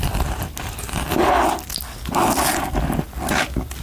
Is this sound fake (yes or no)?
no